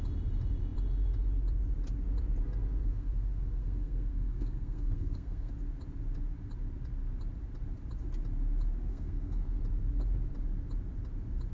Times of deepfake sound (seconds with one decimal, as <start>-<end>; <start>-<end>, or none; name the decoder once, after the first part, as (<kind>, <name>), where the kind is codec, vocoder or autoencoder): 2.8-5.5 (codec, SNAC); 8.9-9.6